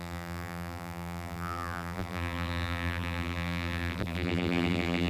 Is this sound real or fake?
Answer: fake